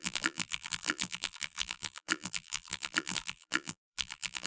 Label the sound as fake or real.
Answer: fake